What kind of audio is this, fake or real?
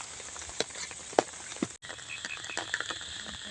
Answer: real